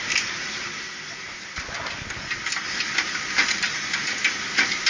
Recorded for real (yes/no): yes